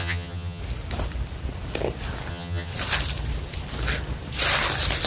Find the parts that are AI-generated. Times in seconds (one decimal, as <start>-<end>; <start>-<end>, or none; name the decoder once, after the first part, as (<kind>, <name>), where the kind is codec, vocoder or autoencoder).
0.0-0.6 (vocoder, HiFi-GAN); 2.3-2.7